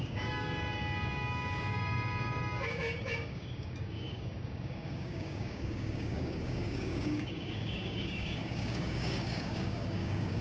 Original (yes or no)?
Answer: no